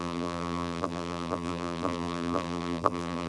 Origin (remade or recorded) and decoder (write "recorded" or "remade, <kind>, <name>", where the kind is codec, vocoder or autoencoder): remade, vocoder, BigVGAN v2